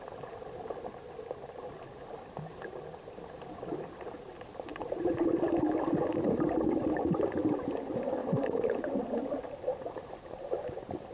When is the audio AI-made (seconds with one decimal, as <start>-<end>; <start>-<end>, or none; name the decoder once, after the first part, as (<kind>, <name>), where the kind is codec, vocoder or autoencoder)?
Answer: 4.7-5.3 (vocoder, BigVGAN v2); 8.2-8.9